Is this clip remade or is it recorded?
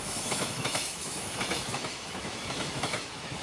remade